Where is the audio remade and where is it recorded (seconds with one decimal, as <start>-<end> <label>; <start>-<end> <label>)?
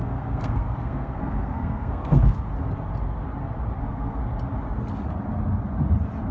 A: 0.0-2.5 remade; 2.5-3.8 recorded; 3.8-4.2 remade; 4.2-6.3 recorded